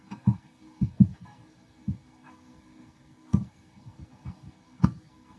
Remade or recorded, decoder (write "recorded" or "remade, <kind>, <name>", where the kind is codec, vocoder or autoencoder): remade, codec, SNAC